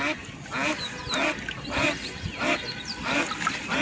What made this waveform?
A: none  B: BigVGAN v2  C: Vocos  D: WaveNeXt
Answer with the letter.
A